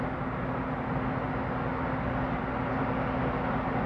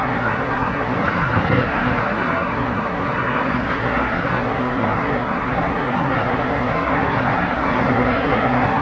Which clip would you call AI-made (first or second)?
second